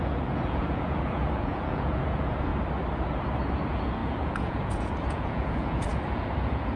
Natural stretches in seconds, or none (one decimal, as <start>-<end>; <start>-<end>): 2.5-3.6